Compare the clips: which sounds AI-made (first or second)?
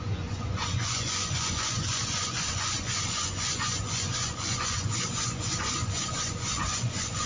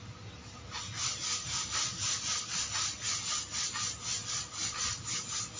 first